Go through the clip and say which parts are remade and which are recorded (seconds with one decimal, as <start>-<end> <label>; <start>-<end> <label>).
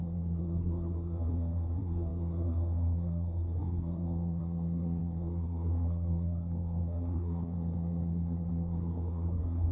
0.0-9.7 remade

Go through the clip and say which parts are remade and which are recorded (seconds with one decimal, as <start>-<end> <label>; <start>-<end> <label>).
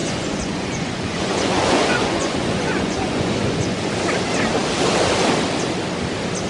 0.0-3.9 remade; 3.9-6.5 recorded